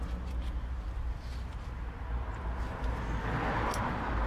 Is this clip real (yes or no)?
yes